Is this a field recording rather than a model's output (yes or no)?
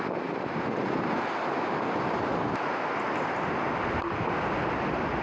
yes